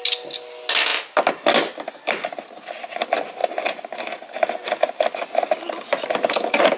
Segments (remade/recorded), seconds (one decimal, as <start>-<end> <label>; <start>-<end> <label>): 0.0-6.8 recorded